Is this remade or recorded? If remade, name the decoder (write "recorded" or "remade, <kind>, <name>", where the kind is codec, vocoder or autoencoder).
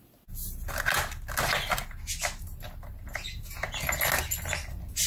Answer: recorded